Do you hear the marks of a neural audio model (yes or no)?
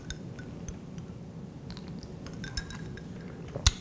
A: no